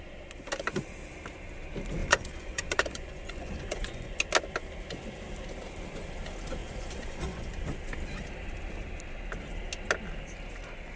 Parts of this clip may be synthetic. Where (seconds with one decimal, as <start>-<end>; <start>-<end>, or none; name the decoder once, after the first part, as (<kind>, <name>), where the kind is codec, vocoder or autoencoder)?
2.0-4.2 (vocoder, Vocos); 6.6-7.5